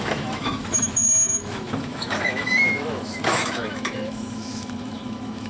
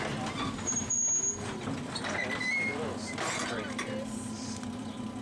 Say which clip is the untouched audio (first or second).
second